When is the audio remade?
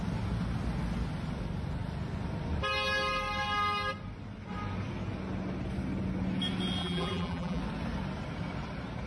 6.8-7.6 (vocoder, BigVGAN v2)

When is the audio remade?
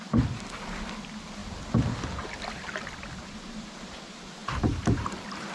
4.4-5.5 (vocoder, BigVGAN v2)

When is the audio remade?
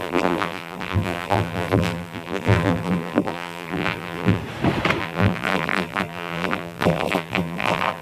0.0-4.4 (vocoder, BigVGAN v2); 5.0-8.0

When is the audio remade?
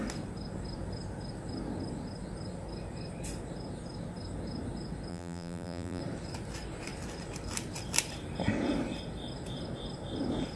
5.1-6.0 (vocoder, BigVGAN v2)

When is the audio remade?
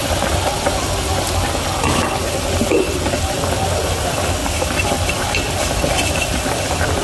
4.4-6.4 (vocoder, BigVGAN v2)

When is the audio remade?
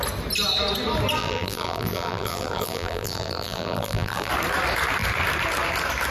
1.2-4.3 (vocoder, BigVGAN v2)